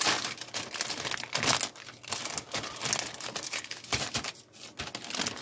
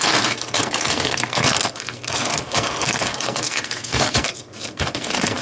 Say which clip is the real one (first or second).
first